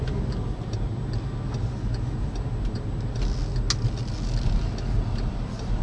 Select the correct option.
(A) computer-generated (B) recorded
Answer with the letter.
B